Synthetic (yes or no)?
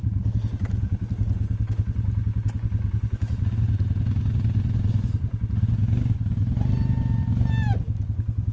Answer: no